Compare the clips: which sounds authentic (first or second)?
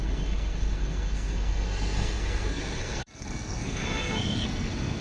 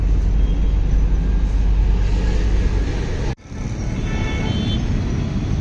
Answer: second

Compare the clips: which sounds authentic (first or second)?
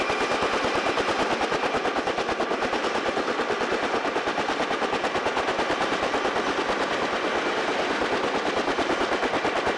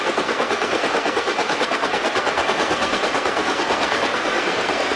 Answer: first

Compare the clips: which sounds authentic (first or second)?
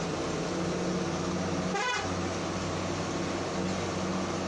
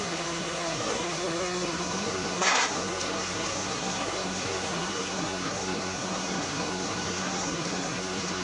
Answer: first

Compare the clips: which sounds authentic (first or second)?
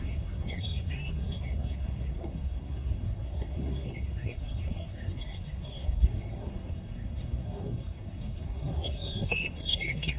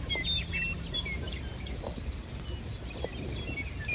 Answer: second